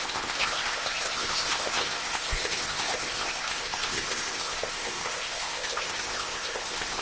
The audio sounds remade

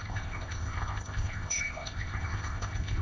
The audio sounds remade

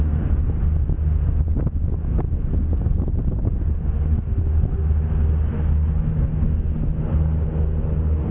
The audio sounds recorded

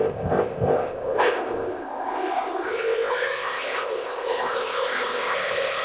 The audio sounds remade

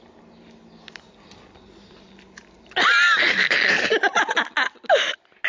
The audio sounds recorded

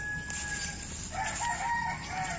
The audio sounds recorded